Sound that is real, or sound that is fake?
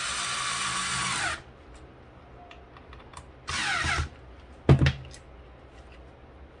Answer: real